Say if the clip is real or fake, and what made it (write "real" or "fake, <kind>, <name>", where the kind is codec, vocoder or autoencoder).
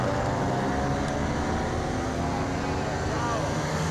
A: real